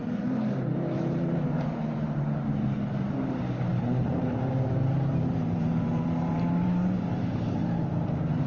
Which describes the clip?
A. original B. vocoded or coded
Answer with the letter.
B